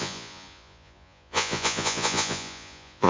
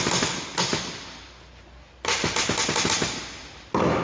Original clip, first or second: second